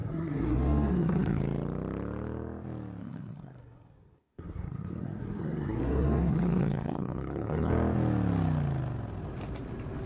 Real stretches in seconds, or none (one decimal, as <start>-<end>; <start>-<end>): 1.4-3.0; 7.7-10.1